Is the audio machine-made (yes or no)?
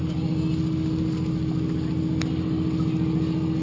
no